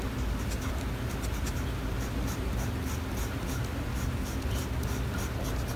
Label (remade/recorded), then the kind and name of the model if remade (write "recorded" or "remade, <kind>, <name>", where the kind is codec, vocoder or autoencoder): recorded